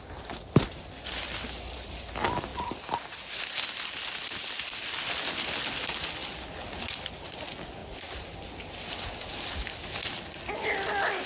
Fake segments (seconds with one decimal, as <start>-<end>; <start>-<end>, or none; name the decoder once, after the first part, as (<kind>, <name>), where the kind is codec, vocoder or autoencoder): none